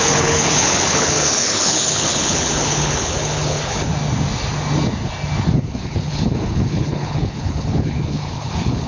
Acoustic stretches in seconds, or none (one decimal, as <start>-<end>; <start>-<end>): 3.9-5.5